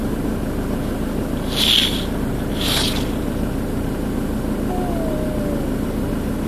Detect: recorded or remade recorded